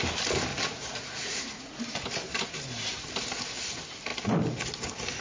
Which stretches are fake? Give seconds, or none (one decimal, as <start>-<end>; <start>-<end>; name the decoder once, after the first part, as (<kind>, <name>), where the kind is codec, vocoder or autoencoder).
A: 0.5-1.7 (vocoder, Vocos)